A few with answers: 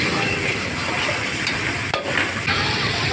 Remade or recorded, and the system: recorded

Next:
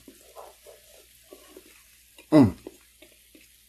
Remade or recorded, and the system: recorded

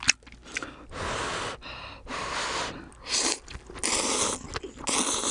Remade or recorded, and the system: recorded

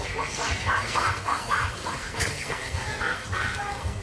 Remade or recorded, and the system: remade, codec, SNAC